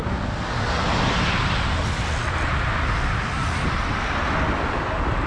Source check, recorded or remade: recorded